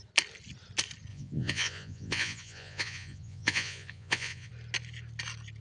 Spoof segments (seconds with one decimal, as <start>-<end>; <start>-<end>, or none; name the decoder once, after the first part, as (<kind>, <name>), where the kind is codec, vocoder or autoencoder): 1.1-4.5 (vocoder, Vocos)